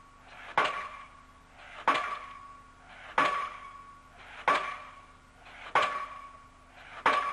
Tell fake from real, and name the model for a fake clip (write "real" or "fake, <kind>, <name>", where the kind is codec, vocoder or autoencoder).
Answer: real